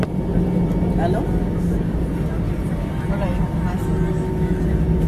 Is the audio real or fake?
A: real